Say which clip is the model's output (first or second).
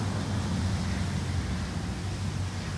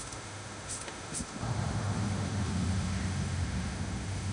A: second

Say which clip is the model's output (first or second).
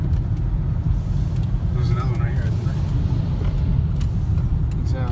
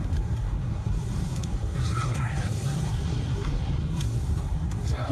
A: second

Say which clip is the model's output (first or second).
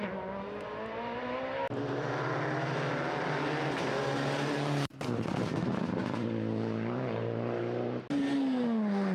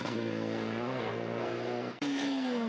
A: second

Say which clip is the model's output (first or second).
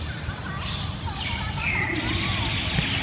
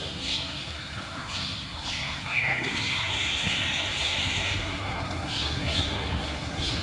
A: second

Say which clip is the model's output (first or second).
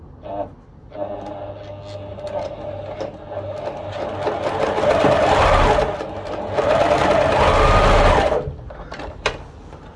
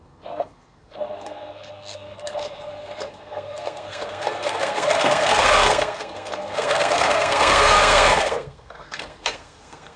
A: second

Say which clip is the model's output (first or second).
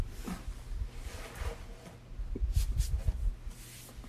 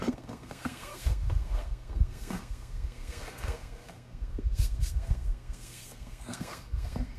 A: second